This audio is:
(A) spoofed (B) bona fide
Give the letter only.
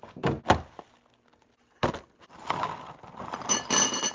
B